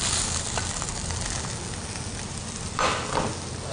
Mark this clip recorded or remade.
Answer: recorded